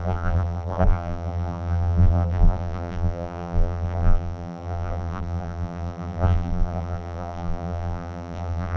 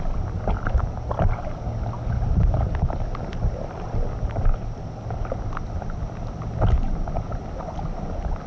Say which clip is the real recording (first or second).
second